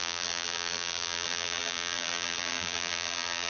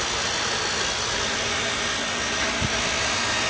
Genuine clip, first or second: second